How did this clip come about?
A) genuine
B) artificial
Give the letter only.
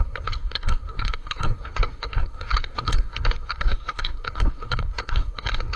B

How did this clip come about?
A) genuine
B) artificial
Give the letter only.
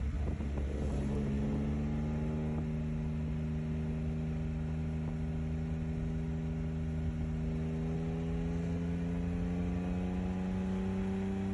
A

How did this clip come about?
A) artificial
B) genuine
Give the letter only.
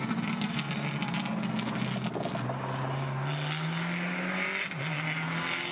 B